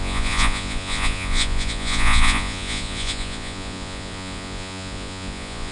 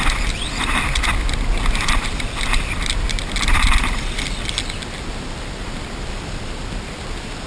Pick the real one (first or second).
second